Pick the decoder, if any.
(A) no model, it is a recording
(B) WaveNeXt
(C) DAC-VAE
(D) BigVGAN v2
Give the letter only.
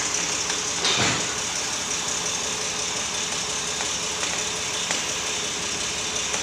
A